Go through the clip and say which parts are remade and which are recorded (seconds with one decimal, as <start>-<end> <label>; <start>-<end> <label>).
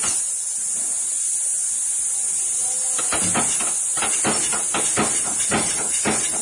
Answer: 0.0-6.4 recorded